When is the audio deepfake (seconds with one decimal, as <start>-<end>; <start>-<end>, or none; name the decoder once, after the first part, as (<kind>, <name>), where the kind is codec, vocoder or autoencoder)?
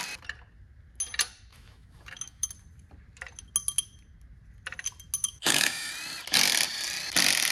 1.5-2.5 (autoencoder, DAC-VAE); 5.2-5.9